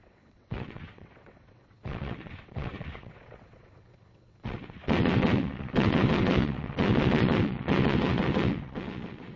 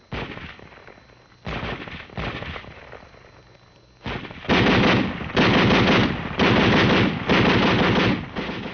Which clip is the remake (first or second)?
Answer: first